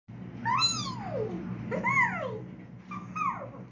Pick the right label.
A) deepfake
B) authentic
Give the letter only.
B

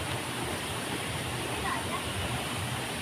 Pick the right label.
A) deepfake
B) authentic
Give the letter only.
A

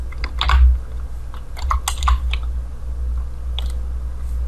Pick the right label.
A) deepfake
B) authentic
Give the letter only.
B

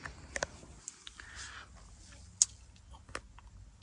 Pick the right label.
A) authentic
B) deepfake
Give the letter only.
A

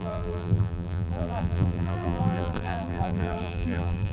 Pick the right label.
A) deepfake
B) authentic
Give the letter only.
A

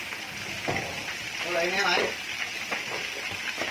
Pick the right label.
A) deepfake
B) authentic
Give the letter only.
B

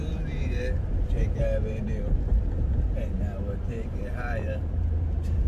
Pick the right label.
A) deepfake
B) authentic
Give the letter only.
A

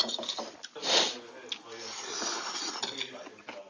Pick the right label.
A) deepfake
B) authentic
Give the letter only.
B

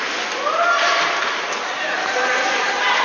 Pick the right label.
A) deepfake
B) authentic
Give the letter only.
A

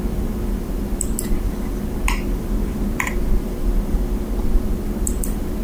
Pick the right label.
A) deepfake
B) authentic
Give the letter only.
A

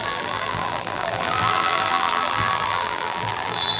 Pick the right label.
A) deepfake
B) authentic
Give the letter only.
A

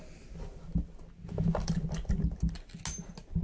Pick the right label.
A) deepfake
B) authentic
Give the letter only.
B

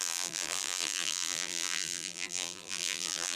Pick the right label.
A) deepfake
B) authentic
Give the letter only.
A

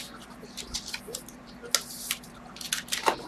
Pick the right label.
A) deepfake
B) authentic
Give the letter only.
B